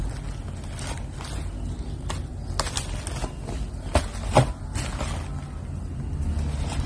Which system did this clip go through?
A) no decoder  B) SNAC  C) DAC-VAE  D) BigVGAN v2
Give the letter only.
A